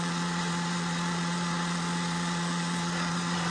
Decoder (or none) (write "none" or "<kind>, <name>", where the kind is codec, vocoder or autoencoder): vocoder, Vocos